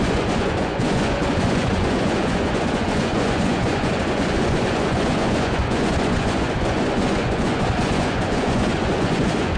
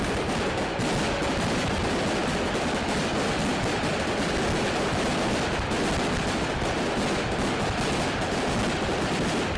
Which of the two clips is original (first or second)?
second